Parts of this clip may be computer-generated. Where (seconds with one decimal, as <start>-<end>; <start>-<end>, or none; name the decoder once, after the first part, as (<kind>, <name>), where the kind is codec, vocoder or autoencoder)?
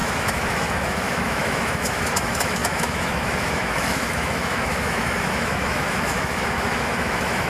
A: 0.0-7.5 (autoencoder, DAC-VAE)